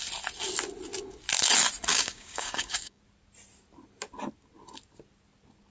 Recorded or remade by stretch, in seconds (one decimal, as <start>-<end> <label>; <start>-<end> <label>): 0.0-1.9 recorded; 1.9-3.0 remade; 3.0-5.7 recorded